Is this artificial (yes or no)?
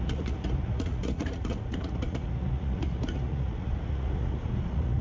yes